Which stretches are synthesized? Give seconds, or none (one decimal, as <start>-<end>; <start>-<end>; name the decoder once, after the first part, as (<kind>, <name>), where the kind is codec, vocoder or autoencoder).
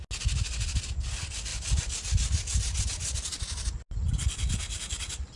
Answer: none